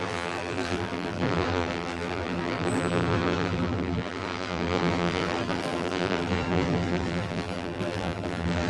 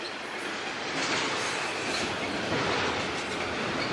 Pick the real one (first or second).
second